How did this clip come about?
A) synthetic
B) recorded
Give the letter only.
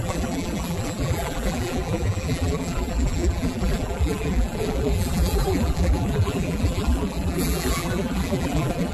A